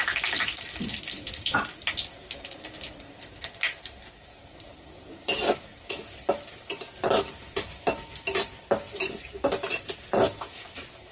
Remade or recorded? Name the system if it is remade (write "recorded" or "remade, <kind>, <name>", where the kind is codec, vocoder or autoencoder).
recorded